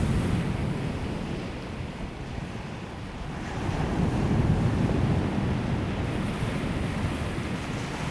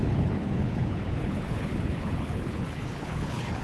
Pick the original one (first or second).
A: first